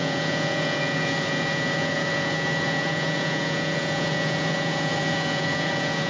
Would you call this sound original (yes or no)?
no